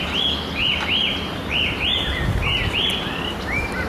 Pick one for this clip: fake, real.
real